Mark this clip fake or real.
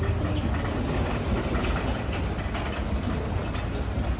real